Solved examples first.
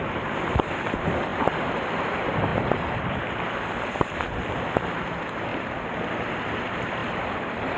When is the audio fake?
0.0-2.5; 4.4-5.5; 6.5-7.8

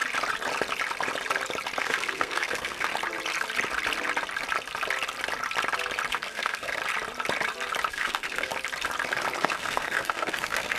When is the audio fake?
1.8-2.9; 6.1-6.8; 7.9-8.5; 9.4-10.8